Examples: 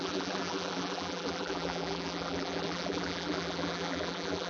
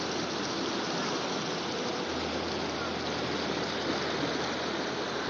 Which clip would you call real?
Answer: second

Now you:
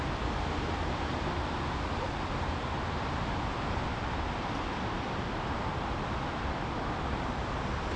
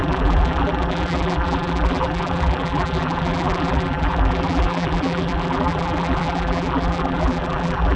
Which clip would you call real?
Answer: first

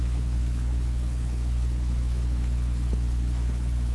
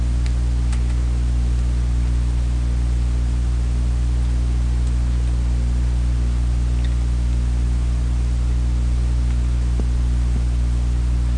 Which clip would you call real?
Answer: second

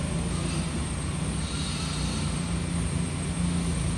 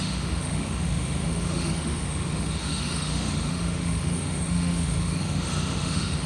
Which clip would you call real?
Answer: first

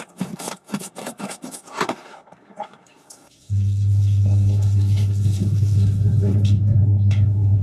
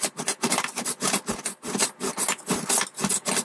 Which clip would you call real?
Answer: second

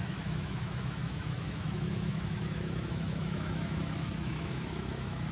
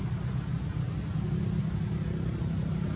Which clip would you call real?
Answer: second